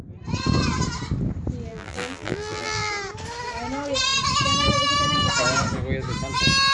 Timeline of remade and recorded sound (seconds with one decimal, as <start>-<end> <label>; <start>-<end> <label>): 0.0-1.7 recorded; 1.7-2.9 remade; 2.9-6.7 recorded